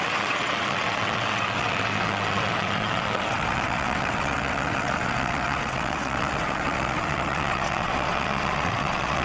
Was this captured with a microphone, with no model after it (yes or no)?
no